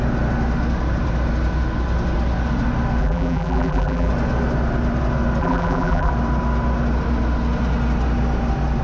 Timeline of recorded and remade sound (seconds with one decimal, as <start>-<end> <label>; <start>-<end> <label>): 0.0-3.0 recorded; 3.0-4.1 remade; 4.1-5.4 recorded; 5.4-6.1 remade; 6.1-8.8 recorded